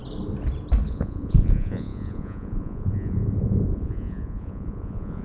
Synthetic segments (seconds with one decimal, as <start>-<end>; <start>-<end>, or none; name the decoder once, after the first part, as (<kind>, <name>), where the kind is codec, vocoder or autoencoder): 0.9-5.2 (vocoder, Vocos)